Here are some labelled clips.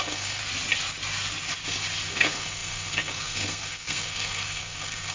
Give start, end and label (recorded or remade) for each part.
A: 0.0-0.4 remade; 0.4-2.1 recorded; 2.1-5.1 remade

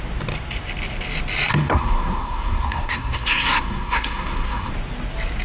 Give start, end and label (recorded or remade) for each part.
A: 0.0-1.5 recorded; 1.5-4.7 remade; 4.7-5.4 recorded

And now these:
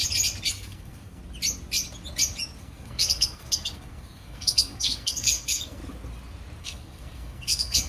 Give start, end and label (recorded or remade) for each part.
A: 0.0-0.5 recorded; 0.5-1.2 remade; 1.2-2.6 recorded; 2.6-5.8 remade; 5.8-6.6 recorded; 6.6-7.9 remade

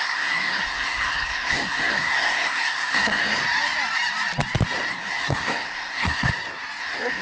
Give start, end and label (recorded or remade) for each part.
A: 0.0-3.4 remade; 3.4-4.9 recorded; 4.9-6.3 remade; 6.3-6.8 recorded; 6.8-7.2 remade

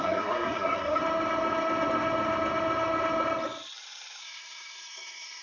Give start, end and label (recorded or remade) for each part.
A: 0.0-1.0 remade; 1.0-4.2 recorded; 4.2-5.4 remade

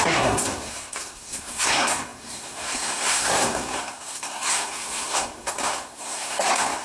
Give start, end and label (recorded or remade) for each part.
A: 0.0-6.8 remade